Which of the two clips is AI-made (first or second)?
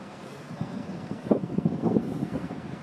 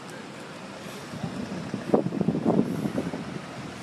first